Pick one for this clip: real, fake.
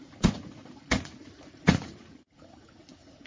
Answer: fake